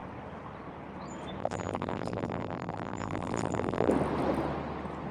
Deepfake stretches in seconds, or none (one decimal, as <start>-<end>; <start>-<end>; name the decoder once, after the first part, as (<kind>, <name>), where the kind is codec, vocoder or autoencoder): 1.4-3.9 (vocoder, BigVGAN v2)